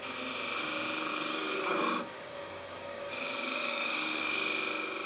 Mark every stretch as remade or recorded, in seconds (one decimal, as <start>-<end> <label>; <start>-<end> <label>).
0.0-1.1 recorded; 1.1-4.2 remade; 4.2-5.1 recorded